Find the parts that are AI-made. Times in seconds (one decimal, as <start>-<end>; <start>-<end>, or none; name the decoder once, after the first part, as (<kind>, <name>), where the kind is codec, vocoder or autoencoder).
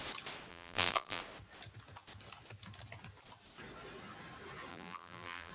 0.5-1.2 (vocoder, BigVGAN v2); 4.7-5.5